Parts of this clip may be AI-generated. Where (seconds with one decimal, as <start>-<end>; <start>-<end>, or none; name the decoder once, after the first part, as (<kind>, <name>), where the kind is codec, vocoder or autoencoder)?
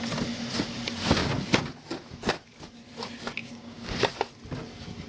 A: 3.4-4.0 (codec, DAC)